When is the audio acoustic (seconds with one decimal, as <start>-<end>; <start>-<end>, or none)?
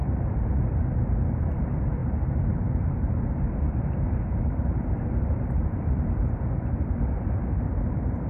none